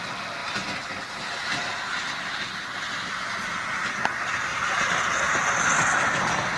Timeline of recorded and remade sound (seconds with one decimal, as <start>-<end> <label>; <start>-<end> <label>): 0.0-4.5 recorded; 4.5-5.4 remade; 5.4-6.6 recorded